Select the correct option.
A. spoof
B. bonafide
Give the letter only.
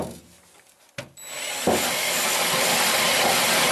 B